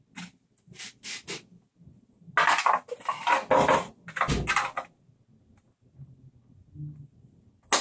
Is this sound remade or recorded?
recorded